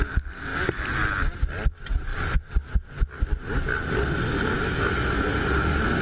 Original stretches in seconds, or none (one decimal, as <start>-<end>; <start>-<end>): 0.0-6.0